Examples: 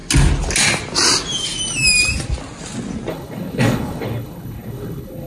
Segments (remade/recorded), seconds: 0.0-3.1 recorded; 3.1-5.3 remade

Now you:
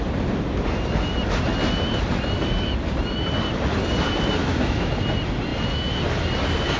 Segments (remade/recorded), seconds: 0.0-4.4 recorded; 4.4-4.9 remade; 4.9-6.8 recorded

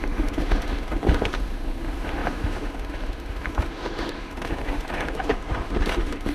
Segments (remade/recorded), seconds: 0.0-6.3 remade

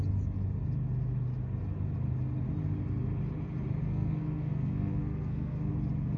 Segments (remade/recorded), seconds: 0.0-3.8 recorded; 3.8-5.7 remade; 5.7-6.2 recorded

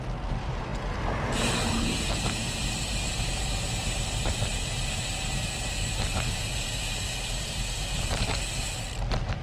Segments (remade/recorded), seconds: 0.0-9.4 recorded

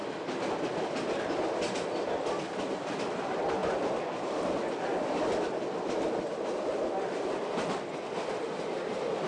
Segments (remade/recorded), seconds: 0.0-9.3 recorded

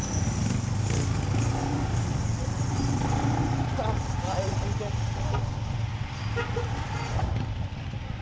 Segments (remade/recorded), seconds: 0.0-1.6 recorded; 1.6-3.4 remade; 3.4-8.2 recorded